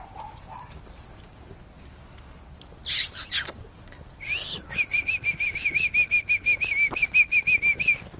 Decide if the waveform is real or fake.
real